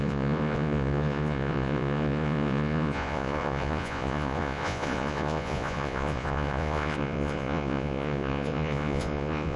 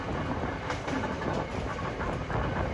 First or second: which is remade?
first